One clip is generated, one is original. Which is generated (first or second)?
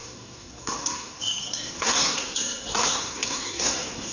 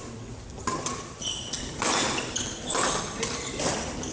first